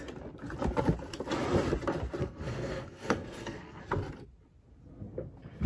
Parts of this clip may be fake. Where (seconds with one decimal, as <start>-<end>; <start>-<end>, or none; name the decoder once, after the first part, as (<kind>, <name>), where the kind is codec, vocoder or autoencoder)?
2.2-3.8 (codec, SNAC)